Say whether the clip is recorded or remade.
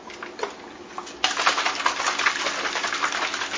recorded